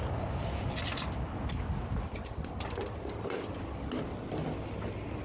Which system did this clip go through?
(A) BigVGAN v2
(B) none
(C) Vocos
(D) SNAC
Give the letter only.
B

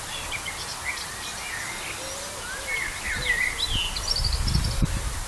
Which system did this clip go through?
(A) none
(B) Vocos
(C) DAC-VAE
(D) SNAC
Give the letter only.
A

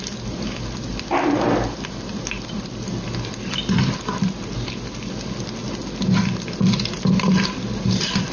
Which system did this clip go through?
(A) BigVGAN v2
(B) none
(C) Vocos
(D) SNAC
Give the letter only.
B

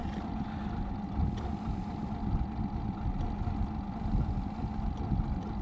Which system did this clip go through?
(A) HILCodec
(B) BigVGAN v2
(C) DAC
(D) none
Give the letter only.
D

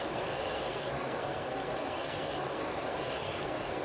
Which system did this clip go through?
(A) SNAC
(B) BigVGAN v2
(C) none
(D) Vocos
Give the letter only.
A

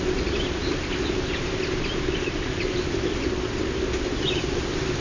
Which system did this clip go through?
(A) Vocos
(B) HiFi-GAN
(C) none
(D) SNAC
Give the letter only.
C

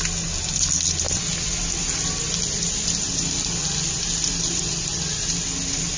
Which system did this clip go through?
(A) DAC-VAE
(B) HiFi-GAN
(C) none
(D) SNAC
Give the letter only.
C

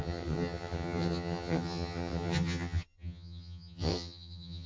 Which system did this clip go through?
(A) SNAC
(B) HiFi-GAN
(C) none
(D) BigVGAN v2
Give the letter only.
B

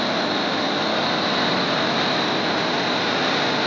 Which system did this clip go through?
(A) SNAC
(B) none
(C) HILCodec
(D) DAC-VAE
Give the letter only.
B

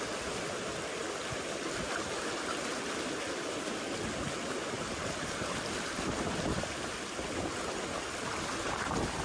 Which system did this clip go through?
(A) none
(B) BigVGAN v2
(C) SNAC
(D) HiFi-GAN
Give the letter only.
A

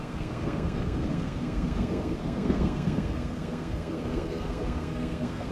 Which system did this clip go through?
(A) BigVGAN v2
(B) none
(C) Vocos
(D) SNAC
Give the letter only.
D